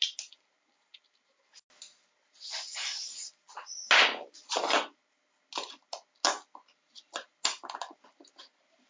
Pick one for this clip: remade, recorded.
recorded